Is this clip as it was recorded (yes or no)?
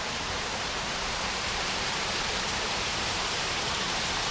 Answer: no